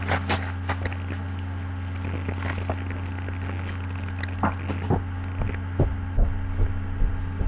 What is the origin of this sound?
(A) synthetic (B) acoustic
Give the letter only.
B